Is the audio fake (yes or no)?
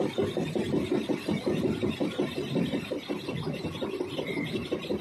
yes